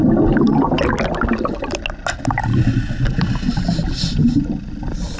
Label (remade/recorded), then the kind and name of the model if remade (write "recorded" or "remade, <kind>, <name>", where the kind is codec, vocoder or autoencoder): recorded